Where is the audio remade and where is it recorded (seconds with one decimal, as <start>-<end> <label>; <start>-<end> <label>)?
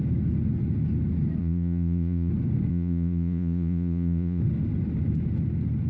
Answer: 0.0-1.4 recorded; 1.4-2.3 remade; 2.3-2.7 recorded; 2.7-4.4 remade; 4.4-5.9 recorded